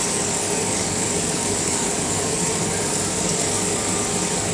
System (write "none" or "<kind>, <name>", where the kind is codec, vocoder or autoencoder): codec, DAC